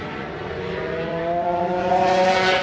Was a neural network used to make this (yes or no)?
yes